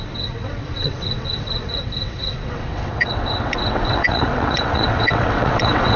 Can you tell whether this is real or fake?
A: fake